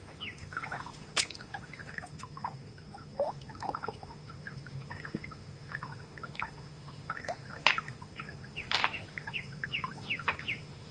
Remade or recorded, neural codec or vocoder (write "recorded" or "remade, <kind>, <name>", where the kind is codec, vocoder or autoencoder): remade, autoencoder, DAC-VAE